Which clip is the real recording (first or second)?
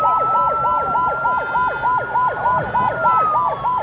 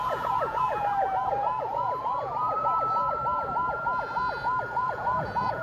first